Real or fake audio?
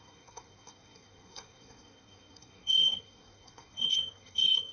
fake